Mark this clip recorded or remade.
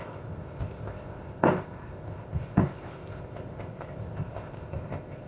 remade